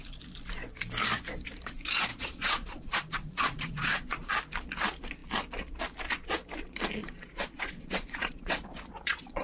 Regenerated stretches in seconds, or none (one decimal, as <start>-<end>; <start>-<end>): 2.1-4.3; 7.0-9.4